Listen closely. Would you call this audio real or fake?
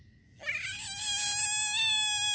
real